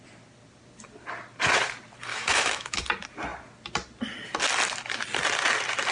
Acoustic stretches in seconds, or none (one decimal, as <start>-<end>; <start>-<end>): 0.0-2.1; 2.8-5.9